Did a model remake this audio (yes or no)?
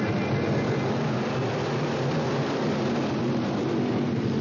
yes